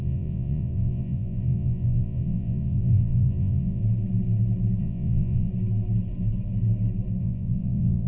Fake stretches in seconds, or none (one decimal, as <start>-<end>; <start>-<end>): 0.0-3.8; 4.8-5.5; 7.2-8.1